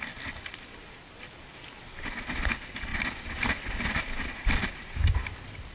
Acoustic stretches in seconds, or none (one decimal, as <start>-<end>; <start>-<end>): 0.0-5.7